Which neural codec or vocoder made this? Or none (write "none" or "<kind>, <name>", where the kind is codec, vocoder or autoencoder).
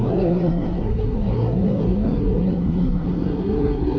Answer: codec, SNAC